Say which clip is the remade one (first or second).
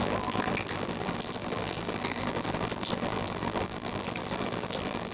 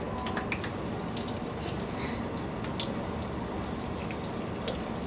first